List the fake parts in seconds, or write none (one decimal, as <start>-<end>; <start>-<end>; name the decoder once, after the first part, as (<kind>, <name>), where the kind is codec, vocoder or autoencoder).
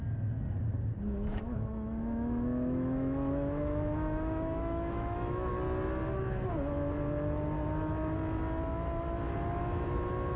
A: 1.3-5.5 (autoencoder, DAC-VAE)